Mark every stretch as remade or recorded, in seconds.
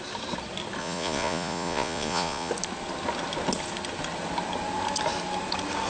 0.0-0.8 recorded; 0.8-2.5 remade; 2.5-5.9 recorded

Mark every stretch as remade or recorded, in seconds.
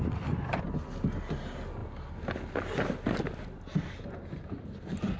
0.0-5.2 recorded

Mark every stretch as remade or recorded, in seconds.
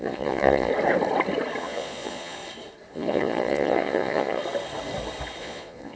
0.0-0.7 remade; 0.7-1.6 recorded; 1.6-2.4 remade; 2.4-2.9 recorded; 2.9-4.4 remade; 4.4-5.4 recorded; 5.4-6.0 remade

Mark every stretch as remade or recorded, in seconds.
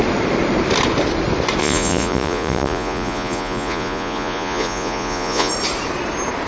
0.0-1.6 recorded; 1.6-5.5 remade; 5.5-6.5 recorded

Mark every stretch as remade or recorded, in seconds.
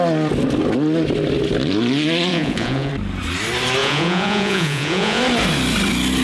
0.0-2.3 recorded; 2.3-2.9 remade; 2.9-3.8 recorded; 3.8-5.2 remade; 5.2-6.2 recorded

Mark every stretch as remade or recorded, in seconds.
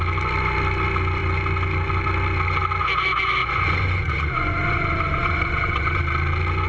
0.0-3.4 recorded; 3.4-6.0 remade; 6.0-6.7 recorded